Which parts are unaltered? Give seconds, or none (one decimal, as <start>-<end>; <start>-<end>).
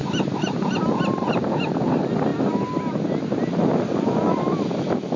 0.0-5.2